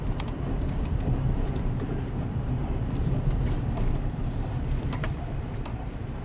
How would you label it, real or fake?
fake